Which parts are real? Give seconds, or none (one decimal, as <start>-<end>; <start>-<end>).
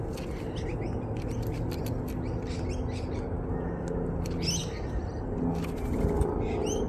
0.0-6.9